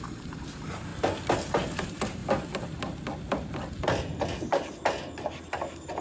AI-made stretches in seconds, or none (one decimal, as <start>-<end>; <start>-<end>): 0.0-0.9; 1.8-2.2